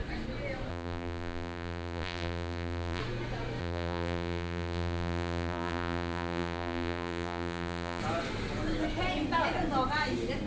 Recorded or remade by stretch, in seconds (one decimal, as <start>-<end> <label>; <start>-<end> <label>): 0.0-0.7 recorded; 0.7-3.0 remade; 3.0-3.6 recorded; 3.6-8.0 remade; 8.0-10.5 recorded